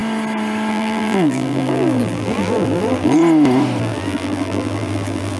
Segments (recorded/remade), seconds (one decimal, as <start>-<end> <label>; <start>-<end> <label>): 0.0-0.7 recorded; 0.7-3.2 remade; 3.2-3.8 recorded; 3.8-5.4 remade